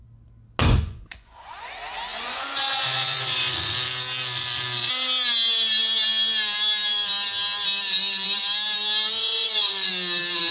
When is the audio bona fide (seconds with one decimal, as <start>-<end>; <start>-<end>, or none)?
0.0-0.6; 1.7-2.1; 3.5-9.2; 9.9-10.5